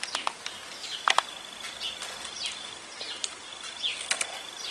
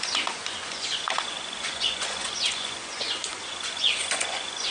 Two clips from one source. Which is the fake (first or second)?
second